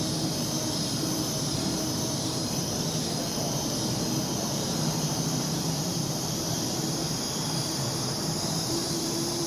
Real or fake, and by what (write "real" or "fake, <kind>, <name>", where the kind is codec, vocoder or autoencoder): fake, vocoder, BigVGAN v2